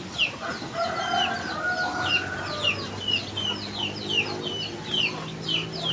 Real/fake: real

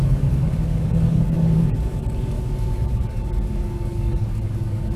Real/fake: fake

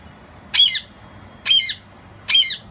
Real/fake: real